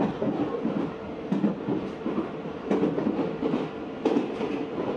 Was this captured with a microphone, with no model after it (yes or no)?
yes